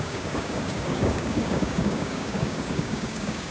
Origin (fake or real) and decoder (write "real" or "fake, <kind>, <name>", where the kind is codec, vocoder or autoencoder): fake, codec, DAC